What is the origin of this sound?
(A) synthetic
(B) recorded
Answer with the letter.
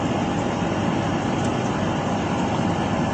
B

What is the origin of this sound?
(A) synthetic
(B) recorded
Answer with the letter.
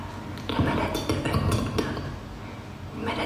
B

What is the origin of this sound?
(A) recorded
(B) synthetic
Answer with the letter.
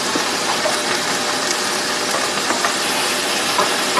A